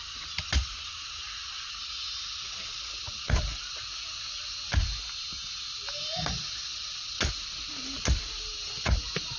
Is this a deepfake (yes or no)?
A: no